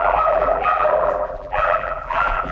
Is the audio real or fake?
fake